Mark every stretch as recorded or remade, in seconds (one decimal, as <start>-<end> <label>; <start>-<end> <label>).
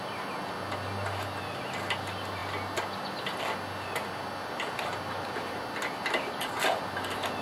0.0-7.4 recorded